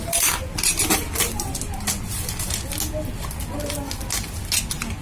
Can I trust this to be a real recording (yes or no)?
yes